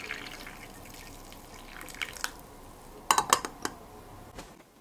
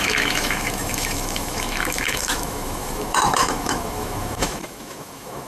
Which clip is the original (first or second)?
first